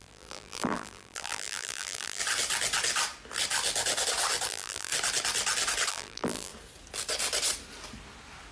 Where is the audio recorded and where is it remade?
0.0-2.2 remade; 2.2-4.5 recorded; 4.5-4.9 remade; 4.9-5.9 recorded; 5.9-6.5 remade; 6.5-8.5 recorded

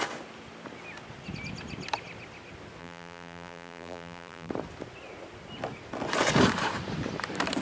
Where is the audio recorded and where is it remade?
0.0-2.8 recorded; 2.8-4.5 remade; 4.5-7.6 recorded

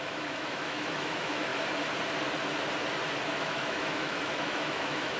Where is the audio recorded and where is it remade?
0.0-1.5 remade; 1.5-3.4 recorded; 3.4-5.2 remade

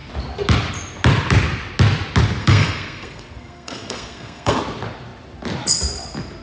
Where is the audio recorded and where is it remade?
0.0-2.4 recorded; 2.4-4.6 remade; 4.6-6.4 recorded

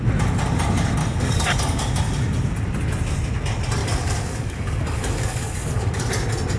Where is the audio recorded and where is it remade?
0.0-1.0 recorded; 1.0-1.9 remade; 1.9-3.8 recorded; 3.8-6.1 remade; 6.1-6.6 recorded

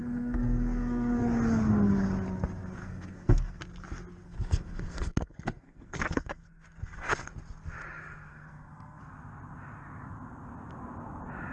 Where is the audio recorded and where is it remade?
0.0-1.2 remade; 1.2-2.8 recorded; 2.8-3.6 remade; 3.6-4.2 recorded; 4.2-7.3 remade; 7.3-8.3 recorded; 8.3-9.0 remade; 9.0-11.5 recorded

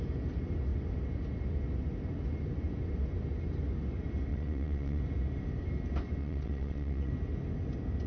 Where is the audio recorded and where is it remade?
0.0-4.3 recorded; 4.3-5.0 remade; 5.0-6.2 recorded; 6.2-7.1 remade; 7.1-8.1 recorded

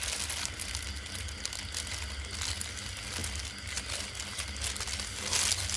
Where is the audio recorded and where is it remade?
0.0-5.8 recorded